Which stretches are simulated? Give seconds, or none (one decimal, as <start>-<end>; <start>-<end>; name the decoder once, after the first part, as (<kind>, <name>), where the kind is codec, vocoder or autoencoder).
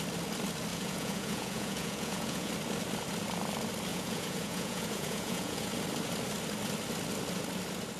0.7-2.5 (vocoder, Vocos); 3.9-5.7